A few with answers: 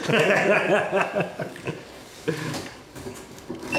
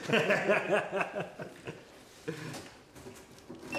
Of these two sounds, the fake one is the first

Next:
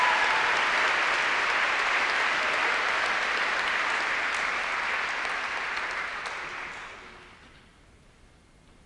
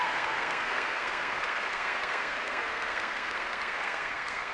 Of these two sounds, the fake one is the second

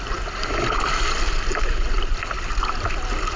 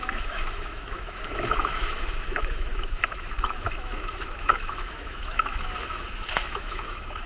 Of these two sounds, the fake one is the second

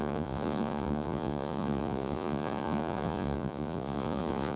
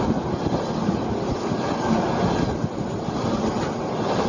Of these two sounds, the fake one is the first